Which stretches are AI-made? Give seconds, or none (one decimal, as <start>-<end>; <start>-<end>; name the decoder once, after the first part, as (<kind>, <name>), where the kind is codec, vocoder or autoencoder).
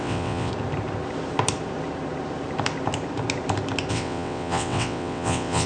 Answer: 0.0-0.5 (vocoder, WaveNeXt); 3.9-5.7